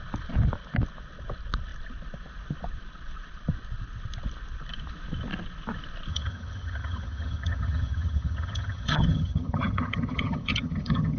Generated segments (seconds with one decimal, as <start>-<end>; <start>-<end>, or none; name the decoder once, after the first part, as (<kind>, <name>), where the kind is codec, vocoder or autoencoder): 6.1-11.2 (vocoder, HiFi-GAN)